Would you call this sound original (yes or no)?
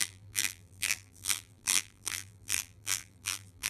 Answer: no